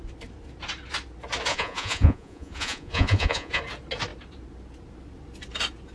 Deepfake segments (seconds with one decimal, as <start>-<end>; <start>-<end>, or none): 1.5-3.6